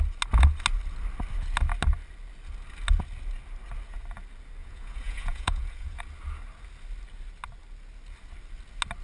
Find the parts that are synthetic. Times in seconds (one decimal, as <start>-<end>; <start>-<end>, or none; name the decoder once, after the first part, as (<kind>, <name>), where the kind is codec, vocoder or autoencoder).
4.6-6.0 (vocoder, Vocos)